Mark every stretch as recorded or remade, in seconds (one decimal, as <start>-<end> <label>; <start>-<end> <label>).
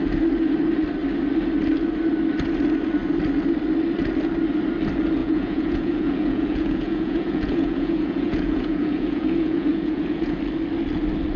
0.0-5.2 recorded; 5.2-10.4 remade; 10.4-11.4 recorded